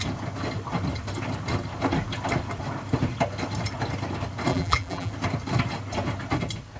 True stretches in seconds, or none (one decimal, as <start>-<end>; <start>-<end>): 0.0-4.5; 5.1-6.8